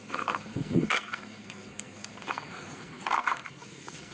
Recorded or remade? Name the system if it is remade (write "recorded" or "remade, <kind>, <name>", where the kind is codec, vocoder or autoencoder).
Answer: remade, codec, SNAC